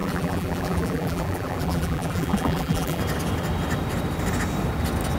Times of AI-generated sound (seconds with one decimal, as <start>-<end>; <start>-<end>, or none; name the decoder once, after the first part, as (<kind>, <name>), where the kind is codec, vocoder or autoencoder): 0.0-3.0 (vocoder, BigVGAN v2)